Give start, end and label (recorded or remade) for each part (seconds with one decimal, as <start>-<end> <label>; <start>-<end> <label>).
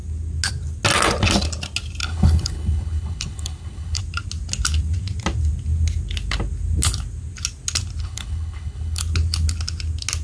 0.0-2.0 recorded; 2.0-4.0 remade; 4.0-8.0 recorded; 8.0-9.0 remade; 9.0-10.2 recorded